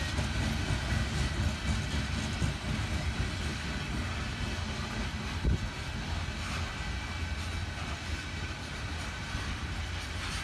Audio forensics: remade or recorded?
recorded